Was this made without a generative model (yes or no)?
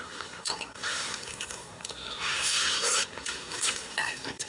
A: no